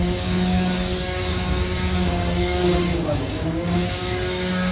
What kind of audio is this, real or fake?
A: fake